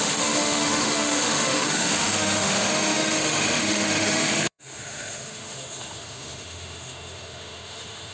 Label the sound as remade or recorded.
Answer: remade